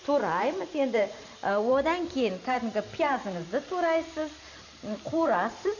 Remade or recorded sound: remade